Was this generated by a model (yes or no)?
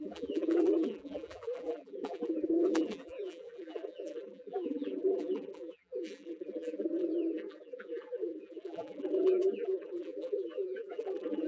yes